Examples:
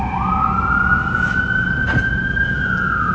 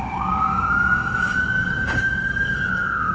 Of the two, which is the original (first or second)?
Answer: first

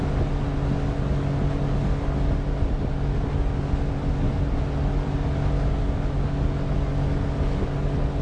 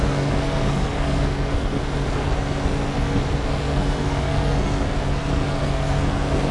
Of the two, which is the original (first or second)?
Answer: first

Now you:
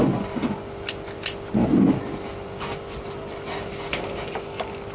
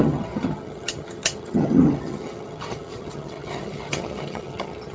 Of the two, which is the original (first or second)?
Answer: first